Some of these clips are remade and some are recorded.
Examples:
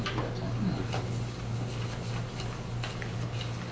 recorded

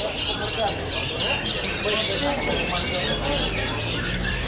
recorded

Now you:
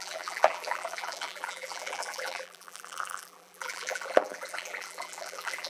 remade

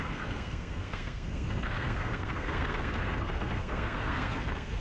remade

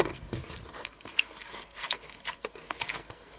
remade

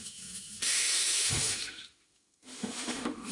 remade